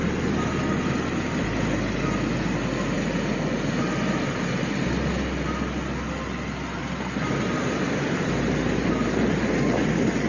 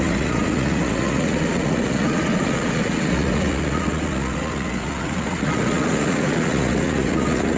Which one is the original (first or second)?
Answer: first